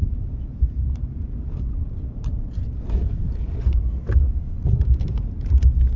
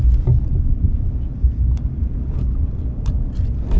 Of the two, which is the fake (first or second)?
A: first